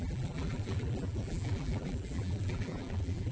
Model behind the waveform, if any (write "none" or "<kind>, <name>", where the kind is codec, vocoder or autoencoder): vocoder, BigVGAN v2